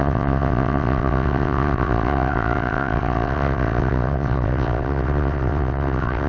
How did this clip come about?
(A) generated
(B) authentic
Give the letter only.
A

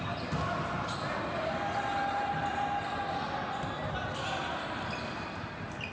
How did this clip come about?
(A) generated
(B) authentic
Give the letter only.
B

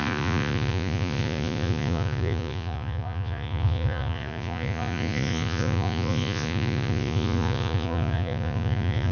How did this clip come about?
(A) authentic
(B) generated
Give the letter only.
B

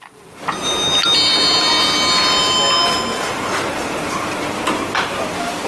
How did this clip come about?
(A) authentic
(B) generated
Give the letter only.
A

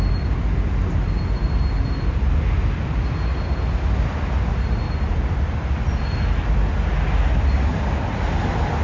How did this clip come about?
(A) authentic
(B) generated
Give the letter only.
A